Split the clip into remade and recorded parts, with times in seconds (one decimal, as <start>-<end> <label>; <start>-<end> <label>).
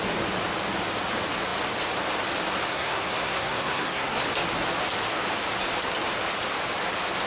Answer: 0.0-2.7 recorded; 2.7-4.2 remade; 4.2-7.3 recorded